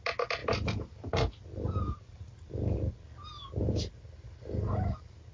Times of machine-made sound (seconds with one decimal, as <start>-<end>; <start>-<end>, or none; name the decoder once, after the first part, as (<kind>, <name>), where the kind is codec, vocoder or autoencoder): 0.4-3.6 (vocoder, BigVGAN v2)